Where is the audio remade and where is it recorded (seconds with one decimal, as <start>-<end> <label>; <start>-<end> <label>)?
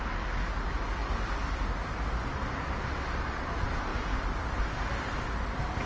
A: 0.0-5.9 recorded